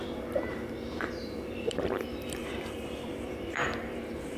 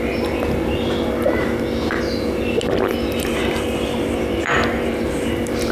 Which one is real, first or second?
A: second